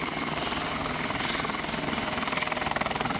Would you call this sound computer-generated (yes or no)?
no